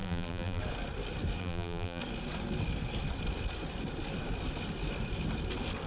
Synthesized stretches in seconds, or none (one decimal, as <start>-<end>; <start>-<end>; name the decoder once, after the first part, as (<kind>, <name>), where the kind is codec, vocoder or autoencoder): 0.0-0.6 (vocoder, BigVGAN v2); 1.4-2.0